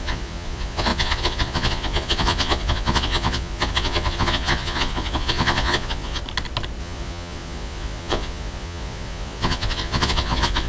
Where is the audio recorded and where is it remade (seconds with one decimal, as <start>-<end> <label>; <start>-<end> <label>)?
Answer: 0.0-6.2 remade; 6.2-6.8 recorded; 6.8-10.7 remade